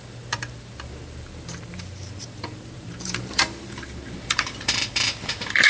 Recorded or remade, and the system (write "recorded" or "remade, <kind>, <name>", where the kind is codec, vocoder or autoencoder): remade, vocoder, BigVGAN v2